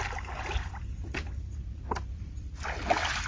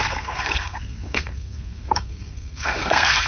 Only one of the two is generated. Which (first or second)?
second